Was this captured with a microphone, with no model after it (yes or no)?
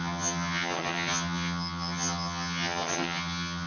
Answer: no